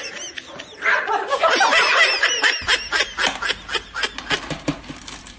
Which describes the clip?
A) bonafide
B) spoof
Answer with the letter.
A